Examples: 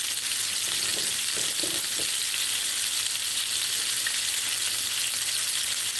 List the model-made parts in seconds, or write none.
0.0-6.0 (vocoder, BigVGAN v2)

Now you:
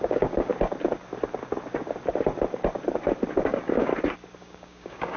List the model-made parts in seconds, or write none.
0.0-0.5 (codec, DAC); 3.5-3.9; 4.4-5.2